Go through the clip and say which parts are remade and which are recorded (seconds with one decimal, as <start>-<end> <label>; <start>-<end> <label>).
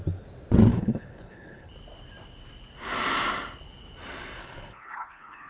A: 0.0-0.7 recorded; 0.7-1.7 remade; 1.7-4.4 recorded; 4.4-5.5 remade